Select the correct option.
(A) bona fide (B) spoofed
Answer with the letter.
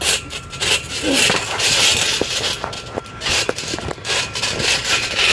A